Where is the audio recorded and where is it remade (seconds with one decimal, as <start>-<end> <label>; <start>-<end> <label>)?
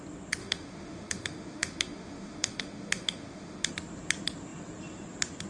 0.0-0.4 recorded; 0.4-3.7 remade; 3.7-5.5 recorded